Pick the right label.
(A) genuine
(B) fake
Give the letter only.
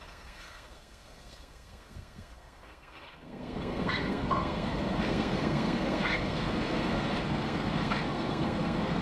B